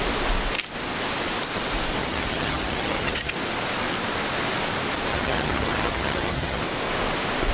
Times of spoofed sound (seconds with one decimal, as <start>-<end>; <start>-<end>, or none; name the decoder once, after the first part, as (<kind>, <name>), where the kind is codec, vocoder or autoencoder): 2.0-3.3 (vocoder, HiFi-GAN); 5.1-6.6